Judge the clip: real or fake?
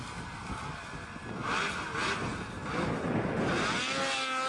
real